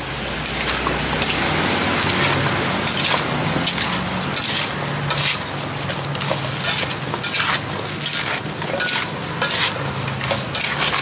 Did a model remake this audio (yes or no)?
no